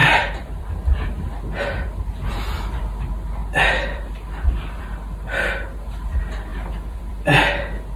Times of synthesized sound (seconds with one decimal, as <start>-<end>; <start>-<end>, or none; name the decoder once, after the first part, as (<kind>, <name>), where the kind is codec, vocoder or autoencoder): 0.0-0.7 (vocoder, BigVGAN v2); 3.4-4.8; 6.5-7.6